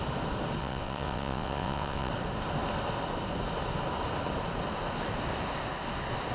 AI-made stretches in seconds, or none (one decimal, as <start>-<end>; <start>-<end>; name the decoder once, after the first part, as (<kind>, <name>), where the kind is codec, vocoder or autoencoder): 0.6-2.1 (vocoder, WaveNeXt)